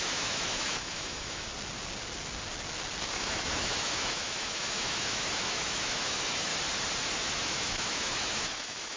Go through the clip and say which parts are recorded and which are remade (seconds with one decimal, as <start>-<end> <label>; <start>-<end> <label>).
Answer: 0.0-1.5 remade; 1.5-3.1 recorded; 3.1-6.5 remade; 6.5-7.2 recorded; 7.2-9.0 remade

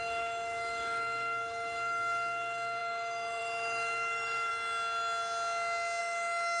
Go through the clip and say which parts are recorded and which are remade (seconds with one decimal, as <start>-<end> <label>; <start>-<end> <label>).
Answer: 0.0-4.5 remade; 4.5-6.0 recorded; 6.0-6.6 remade